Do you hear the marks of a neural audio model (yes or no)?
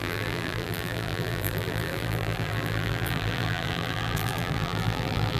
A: yes